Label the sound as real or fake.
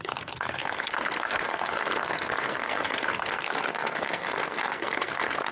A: fake